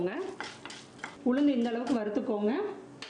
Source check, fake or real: real